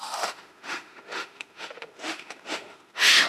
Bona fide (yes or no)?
no